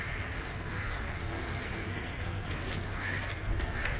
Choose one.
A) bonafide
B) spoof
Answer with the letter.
B